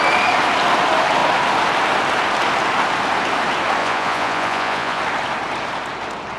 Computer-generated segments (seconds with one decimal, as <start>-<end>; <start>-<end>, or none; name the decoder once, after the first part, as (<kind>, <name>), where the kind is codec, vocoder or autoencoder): 3.8-5.0 (vocoder, Vocos)